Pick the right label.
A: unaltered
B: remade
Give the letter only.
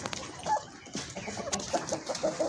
A